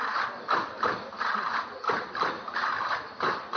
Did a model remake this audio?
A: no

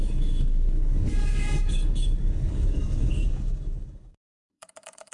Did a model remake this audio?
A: yes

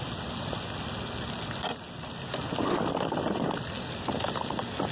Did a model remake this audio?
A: no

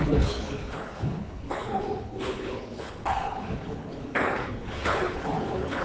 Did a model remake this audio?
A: yes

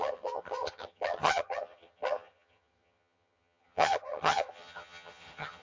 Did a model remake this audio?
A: yes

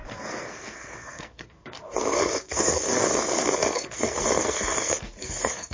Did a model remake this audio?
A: yes